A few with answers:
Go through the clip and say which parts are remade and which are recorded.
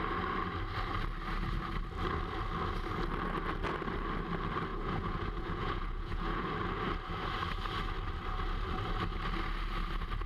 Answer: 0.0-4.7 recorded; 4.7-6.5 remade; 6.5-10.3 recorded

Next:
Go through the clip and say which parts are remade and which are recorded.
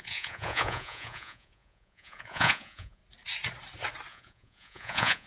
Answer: 0.0-3.0 remade; 3.0-4.1 recorded; 4.1-5.3 remade